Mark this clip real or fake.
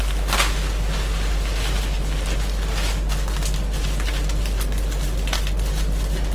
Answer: real